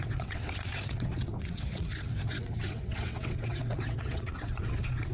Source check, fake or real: fake